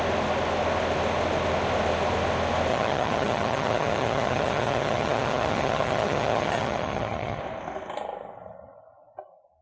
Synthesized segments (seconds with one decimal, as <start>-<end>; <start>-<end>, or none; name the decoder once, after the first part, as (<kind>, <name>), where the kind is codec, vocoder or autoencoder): 2.7-7.4 (vocoder, HiFi-GAN)